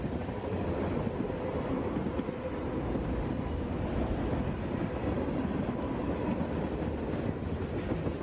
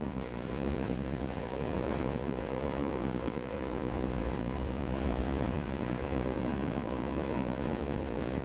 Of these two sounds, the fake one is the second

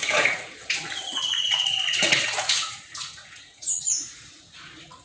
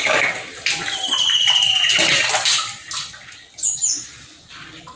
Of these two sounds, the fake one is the first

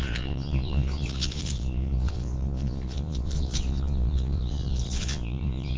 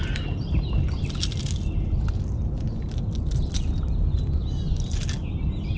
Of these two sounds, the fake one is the first